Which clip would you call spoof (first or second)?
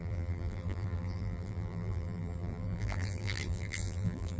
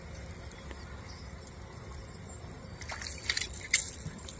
first